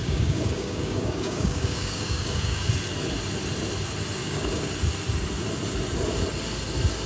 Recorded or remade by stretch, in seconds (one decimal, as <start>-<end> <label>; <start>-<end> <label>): 0.0-2.7 remade; 2.7-4.2 recorded; 4.2-4.7 remade; 4.7-7.1 recorded